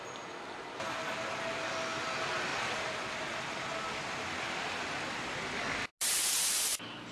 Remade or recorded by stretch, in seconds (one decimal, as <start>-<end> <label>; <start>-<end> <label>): 0.0-7.1 recorded